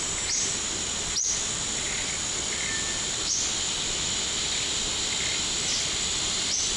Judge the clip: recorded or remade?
recorded